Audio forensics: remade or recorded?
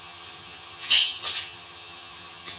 remade